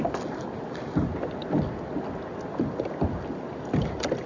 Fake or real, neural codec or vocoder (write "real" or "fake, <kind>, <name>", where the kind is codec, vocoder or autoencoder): real